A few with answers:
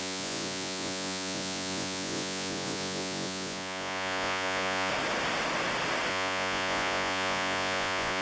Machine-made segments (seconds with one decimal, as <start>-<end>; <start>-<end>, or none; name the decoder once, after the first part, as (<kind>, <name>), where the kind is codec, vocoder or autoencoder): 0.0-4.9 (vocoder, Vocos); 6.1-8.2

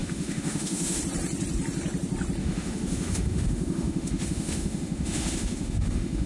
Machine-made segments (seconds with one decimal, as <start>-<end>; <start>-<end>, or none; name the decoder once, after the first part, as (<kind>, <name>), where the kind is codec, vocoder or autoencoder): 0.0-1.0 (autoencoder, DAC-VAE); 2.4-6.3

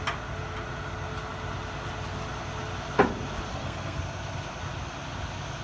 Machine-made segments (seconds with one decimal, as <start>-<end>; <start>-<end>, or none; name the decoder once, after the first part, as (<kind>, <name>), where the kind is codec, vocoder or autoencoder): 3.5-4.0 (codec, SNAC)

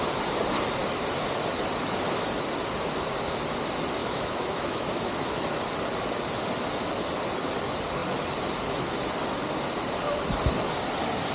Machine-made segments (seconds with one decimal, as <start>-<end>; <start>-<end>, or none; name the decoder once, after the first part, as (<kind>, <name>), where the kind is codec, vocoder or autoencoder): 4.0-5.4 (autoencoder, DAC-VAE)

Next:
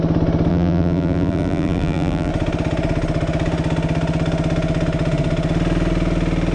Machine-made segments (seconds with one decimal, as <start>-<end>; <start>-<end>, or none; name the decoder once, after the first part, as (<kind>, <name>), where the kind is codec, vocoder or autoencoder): 0.5-2.3 (vocoder, BigVGAN v2)